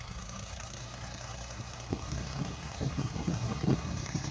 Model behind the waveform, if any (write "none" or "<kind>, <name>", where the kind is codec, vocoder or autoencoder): codec, SNAC